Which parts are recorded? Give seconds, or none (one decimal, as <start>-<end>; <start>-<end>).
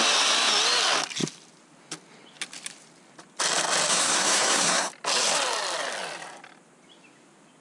0.0-3.9; 4.9-7.6